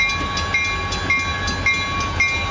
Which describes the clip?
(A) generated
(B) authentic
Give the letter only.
B